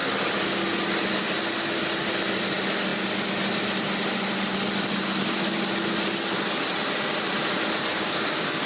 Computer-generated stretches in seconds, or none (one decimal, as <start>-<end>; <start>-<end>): 7.9-8.7